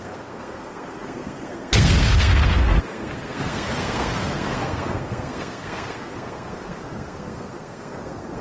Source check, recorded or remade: remade